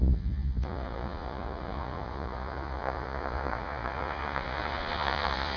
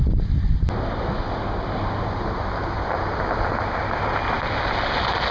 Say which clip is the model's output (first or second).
first